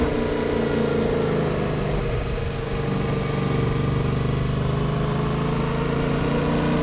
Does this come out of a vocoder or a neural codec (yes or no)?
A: no